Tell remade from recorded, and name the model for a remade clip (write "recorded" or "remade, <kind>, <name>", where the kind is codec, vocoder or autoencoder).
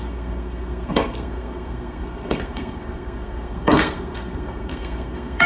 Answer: remade, codec, SNAC